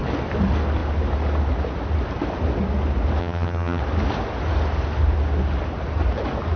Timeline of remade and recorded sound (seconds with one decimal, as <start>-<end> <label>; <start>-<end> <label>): 0.0-3.2 recorded; 3.2-3.8 remade; 3.8-6.6 recorded